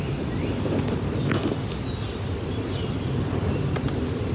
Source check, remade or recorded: recorded